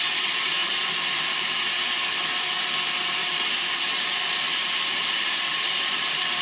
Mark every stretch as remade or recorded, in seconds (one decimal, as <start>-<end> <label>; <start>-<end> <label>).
0.0-0.6 recorded; 0.6-1.6 remade; 1.6-3.0 recorded; 3.0-6.4 remade